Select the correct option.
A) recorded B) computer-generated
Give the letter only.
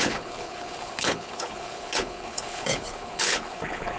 B